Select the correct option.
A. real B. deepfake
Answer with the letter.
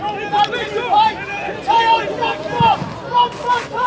A